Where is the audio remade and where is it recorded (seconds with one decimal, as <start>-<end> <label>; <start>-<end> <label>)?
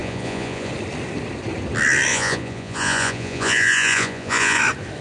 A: 0.0-0.7 remade; 0.7-2.1 recorded; 2.1-4.6 remade; 4.6-5.0 recorded